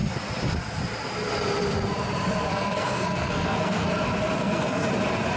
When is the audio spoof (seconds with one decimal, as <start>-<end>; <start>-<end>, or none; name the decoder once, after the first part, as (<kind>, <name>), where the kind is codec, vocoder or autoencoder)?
2.5-3.9 (codec, SNAC); 4.4-4.9